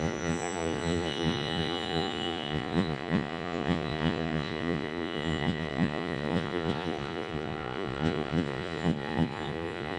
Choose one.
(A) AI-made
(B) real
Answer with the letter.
A